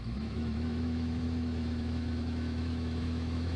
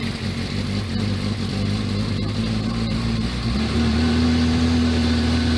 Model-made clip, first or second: first